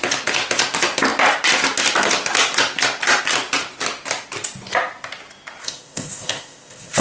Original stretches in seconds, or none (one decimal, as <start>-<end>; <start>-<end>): 0.0-5.6